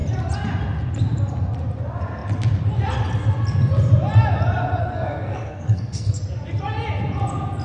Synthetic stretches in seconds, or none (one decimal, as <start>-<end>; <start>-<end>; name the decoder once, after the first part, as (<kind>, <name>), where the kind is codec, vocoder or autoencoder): 4.8-6.2 (codec, SNAC)